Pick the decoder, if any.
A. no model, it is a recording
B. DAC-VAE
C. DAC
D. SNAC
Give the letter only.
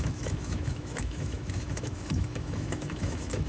B